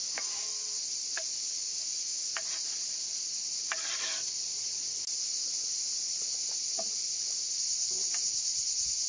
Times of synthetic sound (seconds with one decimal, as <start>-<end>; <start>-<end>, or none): 0.0-0.5; 1.7-2.3